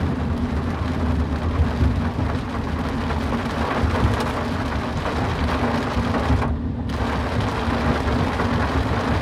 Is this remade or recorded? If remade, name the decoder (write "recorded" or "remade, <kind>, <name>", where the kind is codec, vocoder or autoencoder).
recorded